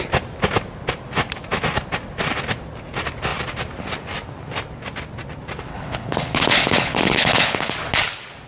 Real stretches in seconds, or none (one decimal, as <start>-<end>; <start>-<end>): 0.0-5.7; 7.7-8.5